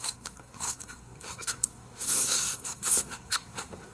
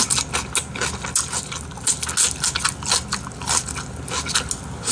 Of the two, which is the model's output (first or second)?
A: first